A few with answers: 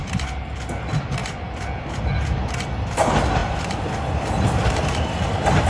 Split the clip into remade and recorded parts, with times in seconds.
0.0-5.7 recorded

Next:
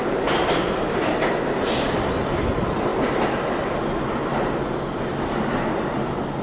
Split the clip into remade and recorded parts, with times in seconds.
0.0-6.4 recorded

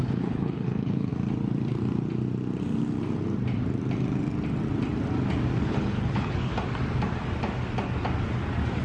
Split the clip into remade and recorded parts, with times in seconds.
0.0-1.1 remade; 1.1-5.6 recorded; 5.6-6.5 remade; 6.5-8.8 recorded

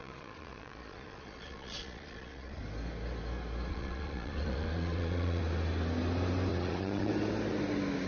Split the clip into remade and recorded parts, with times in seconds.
0.0-2.6 remade; 2.6-3.7 recorded; 3.7-5.4 remade; 5.4-6.5 recorded; 6.5-7.1 remade; 7.1-8.1 recorded

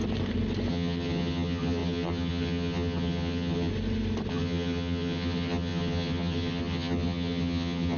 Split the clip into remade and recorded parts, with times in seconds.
0.0-0.7 recorded; 0.7-3.7 remade; 3.7-4.3 recorded; 4.3-8.0 remade

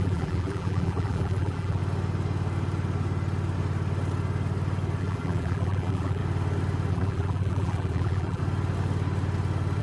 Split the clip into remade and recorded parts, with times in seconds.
0.0-1.8 remade; 1.8-5.0 recorded; 5.0-6.2 remade; 6.2-6.9 recorded; 6.9-8.4 remade; 8.4-9.8 recorded

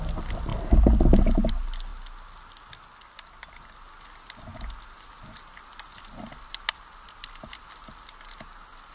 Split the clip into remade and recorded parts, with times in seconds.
0.0-8.9 recorded